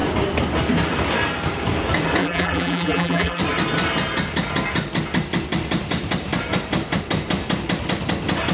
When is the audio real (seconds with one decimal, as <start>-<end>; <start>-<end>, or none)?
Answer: 0.0-2.2; 3.4-8.5